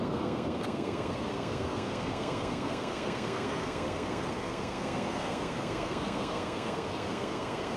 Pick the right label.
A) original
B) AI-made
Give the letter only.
B